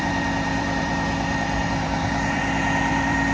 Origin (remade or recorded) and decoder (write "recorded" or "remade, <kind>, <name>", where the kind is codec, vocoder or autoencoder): remade, vocoder, BigVGAN v2